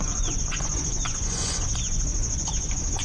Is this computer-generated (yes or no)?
yes